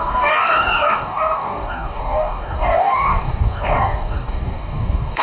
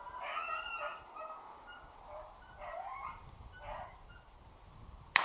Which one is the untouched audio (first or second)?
second